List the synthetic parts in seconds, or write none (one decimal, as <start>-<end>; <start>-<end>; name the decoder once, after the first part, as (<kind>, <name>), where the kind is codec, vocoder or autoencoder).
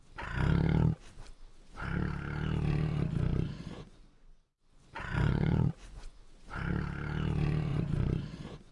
3.3-6.2 (vocoder, Vocos); 7.7-8.7